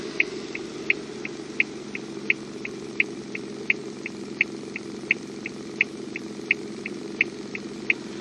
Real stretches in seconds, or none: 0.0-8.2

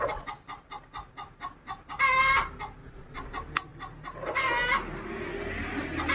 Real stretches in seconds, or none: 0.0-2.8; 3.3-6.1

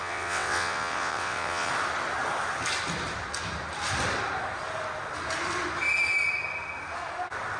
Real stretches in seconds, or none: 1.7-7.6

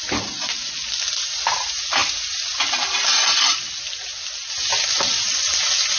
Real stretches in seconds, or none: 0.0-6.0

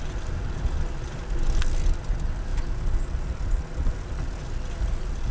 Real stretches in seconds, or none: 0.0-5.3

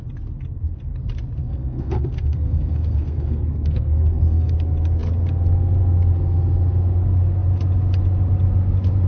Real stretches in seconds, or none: 0.0-1.4; 4.5-9.1